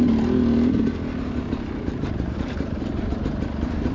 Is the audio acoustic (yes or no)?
yes